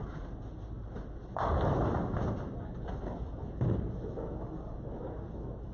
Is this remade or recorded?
recorded